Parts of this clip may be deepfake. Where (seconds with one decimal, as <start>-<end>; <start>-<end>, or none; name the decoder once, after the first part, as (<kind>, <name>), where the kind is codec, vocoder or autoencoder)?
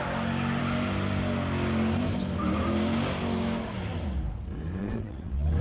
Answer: 4.8-5.6 (vocoder, WaveNeXt)